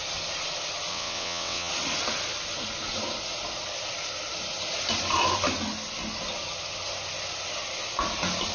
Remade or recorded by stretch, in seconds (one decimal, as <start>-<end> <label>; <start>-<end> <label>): 0.0-0.9 recorded; 0.9-1.7 remade; 1.7-8.5 recorded